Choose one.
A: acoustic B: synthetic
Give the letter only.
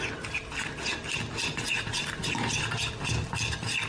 A